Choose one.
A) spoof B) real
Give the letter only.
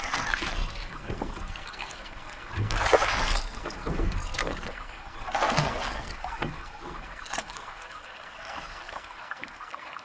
A